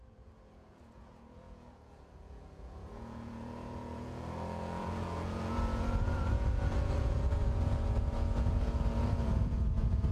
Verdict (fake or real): fake